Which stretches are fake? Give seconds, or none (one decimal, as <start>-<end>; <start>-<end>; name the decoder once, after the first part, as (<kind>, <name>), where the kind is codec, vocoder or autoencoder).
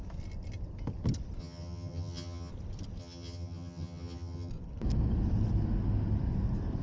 1.4-2.5 (vocoder, HiFi-GAN); 3.0-4.5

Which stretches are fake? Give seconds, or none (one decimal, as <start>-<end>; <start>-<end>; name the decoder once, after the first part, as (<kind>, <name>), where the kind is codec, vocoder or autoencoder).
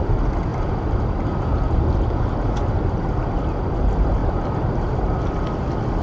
0.5-1.8 (vocoder, BigVGAN v2); 4.2-5.2